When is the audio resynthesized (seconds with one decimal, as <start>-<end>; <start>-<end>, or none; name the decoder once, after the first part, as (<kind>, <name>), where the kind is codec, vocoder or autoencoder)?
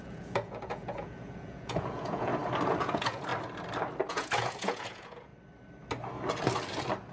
0.0-2.3 (vocoder, Vocos); 2.8-3.3; 4.1-5.3